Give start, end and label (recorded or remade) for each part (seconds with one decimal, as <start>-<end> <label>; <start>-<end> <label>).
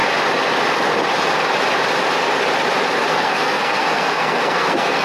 0.0-3.0 recorded; 3.0-5.0 remade